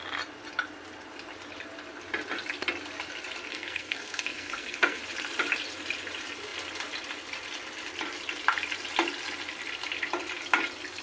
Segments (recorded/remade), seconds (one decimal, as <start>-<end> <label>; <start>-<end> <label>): 0.0-3.5 recorded; 3.5-5.0 remade; 5.0-11.0 recorded